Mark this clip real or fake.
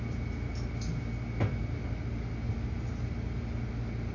real